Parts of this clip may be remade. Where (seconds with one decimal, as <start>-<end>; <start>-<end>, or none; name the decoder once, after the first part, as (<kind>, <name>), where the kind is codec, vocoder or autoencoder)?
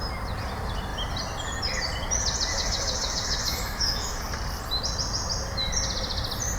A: 2.5-4.2 (autoencoder, DAC-VAE)